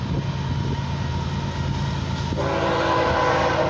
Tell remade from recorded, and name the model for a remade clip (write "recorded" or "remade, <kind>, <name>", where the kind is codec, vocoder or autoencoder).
recorded